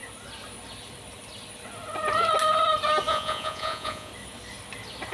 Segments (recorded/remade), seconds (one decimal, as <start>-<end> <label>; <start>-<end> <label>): 0.0-3.1 recorded; 3.1-4.1 remade; 4.1-5.1 recorded